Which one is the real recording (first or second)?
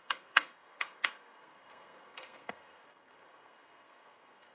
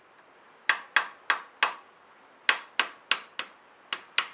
second